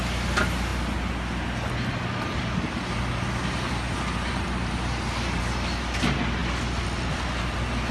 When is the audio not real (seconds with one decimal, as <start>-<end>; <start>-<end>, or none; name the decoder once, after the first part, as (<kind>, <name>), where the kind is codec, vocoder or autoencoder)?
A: none